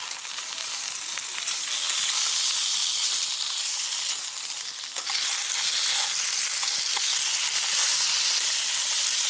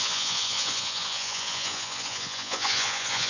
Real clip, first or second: first